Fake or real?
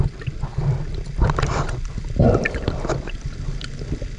real